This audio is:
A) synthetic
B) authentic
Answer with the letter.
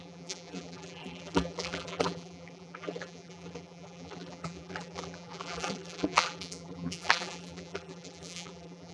A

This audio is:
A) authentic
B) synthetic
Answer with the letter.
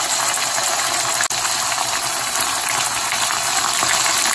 A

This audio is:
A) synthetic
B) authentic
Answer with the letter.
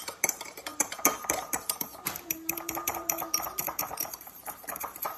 A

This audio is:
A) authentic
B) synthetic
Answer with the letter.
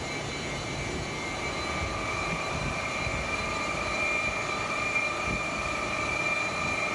B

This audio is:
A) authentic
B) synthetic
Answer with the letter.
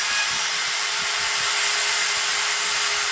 B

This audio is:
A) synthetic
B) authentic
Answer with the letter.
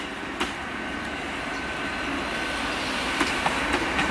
B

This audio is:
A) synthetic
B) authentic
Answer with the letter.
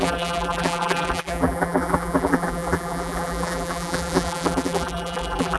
A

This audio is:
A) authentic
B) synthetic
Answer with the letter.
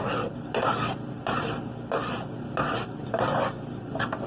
A